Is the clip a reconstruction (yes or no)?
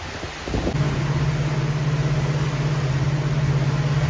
no